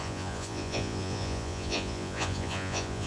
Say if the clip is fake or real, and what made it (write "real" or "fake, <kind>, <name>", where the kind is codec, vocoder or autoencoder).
fake, vocoder, Vocos